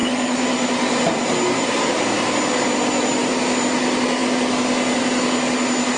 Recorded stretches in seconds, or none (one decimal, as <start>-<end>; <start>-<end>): 0.0-6.0